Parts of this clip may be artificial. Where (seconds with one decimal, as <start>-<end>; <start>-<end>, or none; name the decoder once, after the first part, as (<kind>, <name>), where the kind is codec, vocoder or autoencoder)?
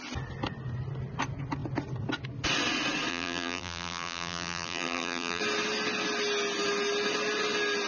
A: 3.1-5.4 (vocoder, BigVGAN v2)